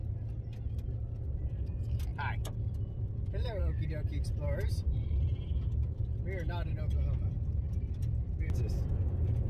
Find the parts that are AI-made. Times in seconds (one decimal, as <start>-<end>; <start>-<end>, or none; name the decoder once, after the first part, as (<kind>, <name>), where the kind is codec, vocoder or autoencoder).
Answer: none